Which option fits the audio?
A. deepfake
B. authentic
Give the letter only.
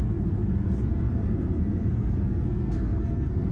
A